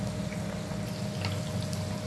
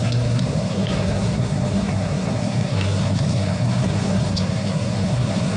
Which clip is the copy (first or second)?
second